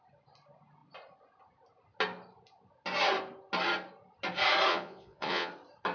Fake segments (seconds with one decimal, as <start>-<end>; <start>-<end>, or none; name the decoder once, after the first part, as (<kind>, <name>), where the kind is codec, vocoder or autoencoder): 4.7-5.5 (vocoder, Vocos)

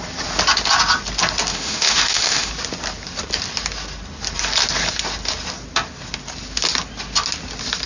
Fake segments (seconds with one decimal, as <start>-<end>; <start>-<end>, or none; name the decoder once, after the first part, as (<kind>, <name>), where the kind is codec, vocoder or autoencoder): 1.5-2.5 (autoencoder, DAC-VAE)